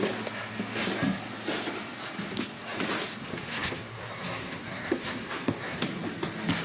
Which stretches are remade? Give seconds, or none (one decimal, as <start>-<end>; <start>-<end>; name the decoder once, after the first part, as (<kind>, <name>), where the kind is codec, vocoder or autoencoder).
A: 3.3-5.8 (codec, SNAC)